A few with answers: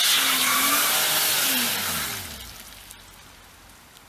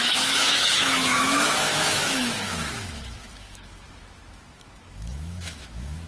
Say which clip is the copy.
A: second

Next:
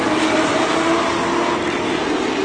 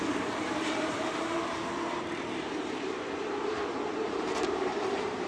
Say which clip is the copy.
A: second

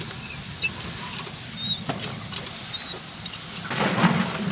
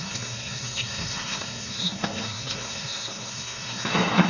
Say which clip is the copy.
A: second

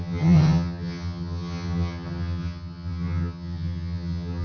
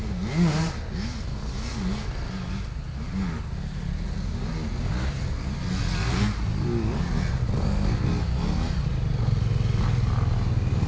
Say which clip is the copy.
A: first